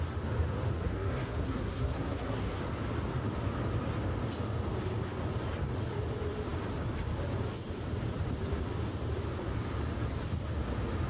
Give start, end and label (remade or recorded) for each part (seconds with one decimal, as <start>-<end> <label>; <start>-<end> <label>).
0.0-0.7 recorded; 0.7-2.6 remade; 2.6-11.1 recorded